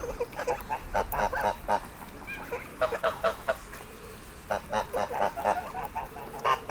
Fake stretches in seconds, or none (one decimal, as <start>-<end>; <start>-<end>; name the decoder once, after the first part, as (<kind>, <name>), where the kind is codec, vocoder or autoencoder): 2.7-3.5 (autoencoder, DAC-VAE)